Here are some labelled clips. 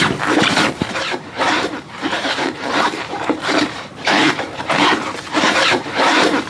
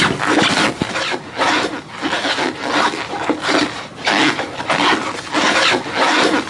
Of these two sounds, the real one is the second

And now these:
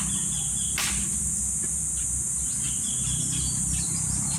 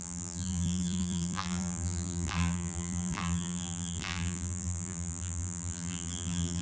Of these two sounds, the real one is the first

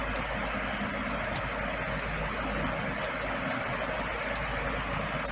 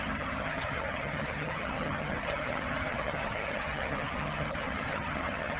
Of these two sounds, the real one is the first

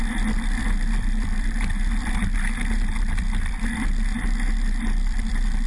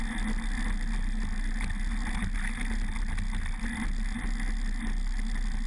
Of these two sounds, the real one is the second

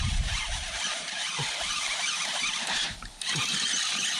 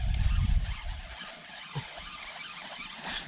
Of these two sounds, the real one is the second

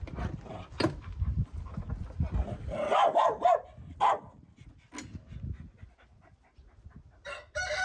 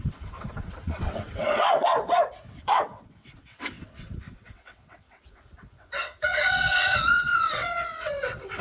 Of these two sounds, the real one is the first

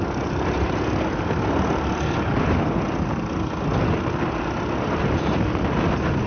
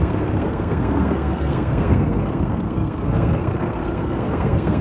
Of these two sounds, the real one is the first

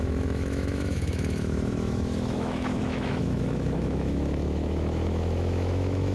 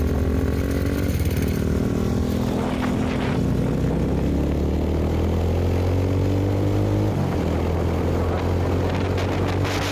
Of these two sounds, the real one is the second